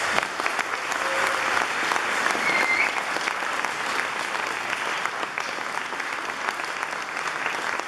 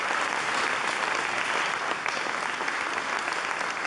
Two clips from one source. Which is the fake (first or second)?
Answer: second